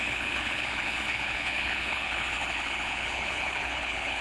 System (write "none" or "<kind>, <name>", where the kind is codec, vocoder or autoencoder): codec, HILCodec